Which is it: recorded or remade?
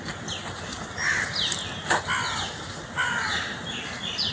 recorded